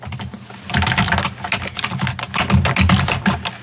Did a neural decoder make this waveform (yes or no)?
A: no